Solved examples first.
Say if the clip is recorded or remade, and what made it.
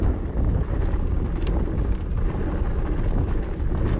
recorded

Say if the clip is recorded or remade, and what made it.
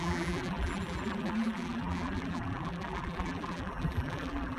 remade, vocoder, BigVGAN v2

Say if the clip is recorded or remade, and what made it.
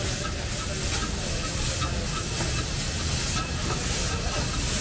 recorded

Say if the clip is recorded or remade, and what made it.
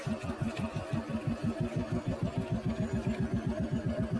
recorded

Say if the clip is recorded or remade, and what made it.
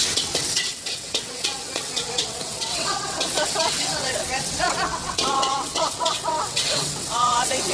remade, vocoder, WaveNeXt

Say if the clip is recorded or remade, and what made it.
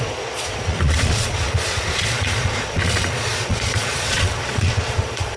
remade, vocoder, Vocos